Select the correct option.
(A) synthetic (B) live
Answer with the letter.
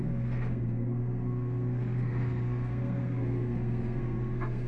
A